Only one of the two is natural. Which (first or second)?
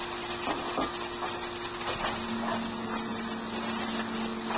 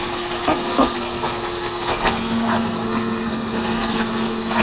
first